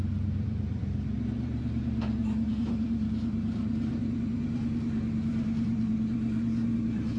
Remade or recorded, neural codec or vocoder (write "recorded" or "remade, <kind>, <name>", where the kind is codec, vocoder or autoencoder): remade, vocoder, BigVGAN v2